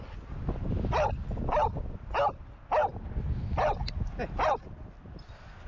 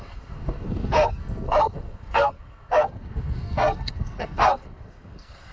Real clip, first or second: first